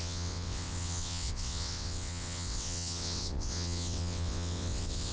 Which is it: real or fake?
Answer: fake